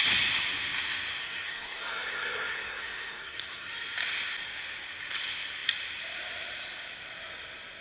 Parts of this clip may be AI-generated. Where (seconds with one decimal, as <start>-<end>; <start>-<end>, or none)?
1.2-3.7